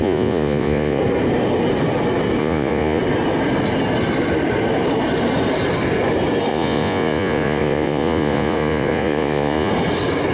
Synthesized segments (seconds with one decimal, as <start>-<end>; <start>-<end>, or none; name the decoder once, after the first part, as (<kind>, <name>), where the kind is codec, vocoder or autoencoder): 0.0-1.0 (vocoder, Vocos); 2.4-3.0; 6.5-9.7